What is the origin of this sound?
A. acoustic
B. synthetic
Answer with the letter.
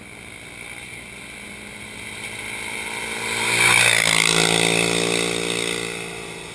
A